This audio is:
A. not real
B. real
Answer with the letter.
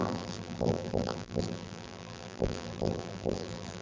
A